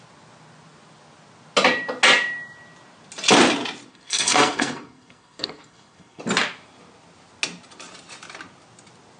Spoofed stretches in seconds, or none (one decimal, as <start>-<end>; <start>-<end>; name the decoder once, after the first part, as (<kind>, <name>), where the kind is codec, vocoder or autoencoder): 3.9-6.2 (codec, SNAC)